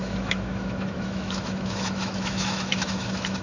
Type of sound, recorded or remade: remade